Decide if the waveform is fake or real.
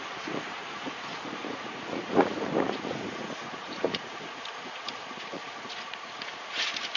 fake